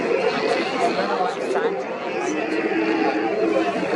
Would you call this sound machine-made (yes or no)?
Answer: no